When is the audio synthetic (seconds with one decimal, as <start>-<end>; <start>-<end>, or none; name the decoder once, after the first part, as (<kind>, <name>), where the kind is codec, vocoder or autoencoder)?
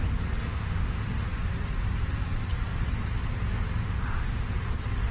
0.5-1.1 (autoencoder, DAC-VAE); 3.8-4.5